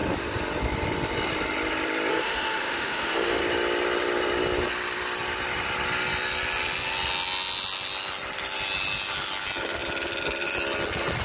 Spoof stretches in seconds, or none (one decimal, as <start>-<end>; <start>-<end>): 2.1-3.4